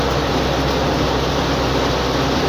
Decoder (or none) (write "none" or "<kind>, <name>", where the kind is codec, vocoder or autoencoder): none